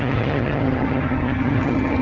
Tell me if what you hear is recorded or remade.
remade